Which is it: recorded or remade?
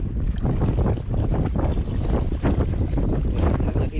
recorded